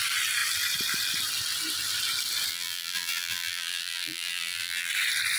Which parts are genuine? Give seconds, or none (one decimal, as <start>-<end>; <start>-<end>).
0.0-2.5; 4.9-5.4